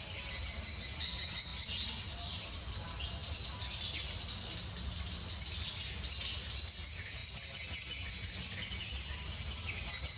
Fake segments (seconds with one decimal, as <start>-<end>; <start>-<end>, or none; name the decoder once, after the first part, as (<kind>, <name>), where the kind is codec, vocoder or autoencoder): none